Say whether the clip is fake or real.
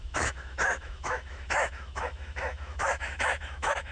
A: fake